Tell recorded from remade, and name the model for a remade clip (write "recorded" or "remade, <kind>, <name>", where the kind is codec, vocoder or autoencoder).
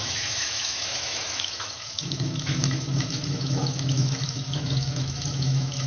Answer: remade, autoencoder, DAC-VAE